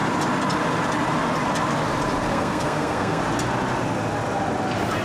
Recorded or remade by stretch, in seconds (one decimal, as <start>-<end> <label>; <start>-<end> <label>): 0.0-2.3 recorded; 2.3-3.2 remade; 3.2-5.0 recorded